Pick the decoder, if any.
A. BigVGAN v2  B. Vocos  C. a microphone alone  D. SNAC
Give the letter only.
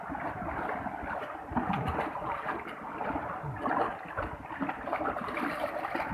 C